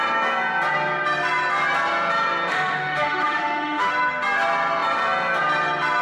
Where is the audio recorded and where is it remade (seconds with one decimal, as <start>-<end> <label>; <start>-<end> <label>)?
0.0-2.5 recorded; 2.5-3.9 remade; 3.9-6.0 recorded